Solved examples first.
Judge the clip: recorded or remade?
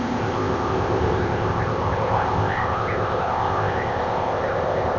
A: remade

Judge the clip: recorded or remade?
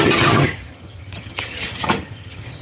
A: remade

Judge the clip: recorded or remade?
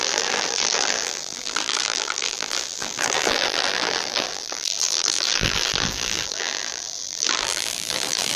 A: remade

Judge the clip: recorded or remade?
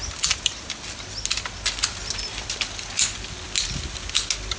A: recorded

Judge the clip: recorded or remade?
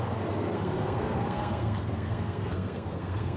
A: remade